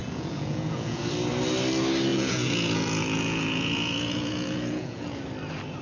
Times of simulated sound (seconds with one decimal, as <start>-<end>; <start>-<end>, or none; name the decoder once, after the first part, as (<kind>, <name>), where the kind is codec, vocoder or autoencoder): 0.0-1.0 (vocoder, Vocos); 2.1-5.2